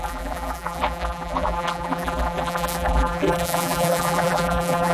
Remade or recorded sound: remade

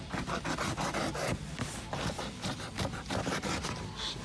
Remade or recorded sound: remade